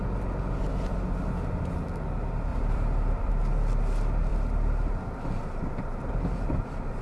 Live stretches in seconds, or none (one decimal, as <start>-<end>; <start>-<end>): 0.0-2.5; 3.3-4.3; 4.9-7.0